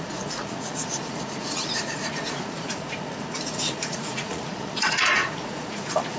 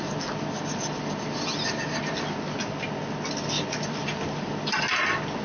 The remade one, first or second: first